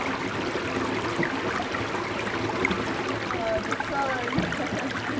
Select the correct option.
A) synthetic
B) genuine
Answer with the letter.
B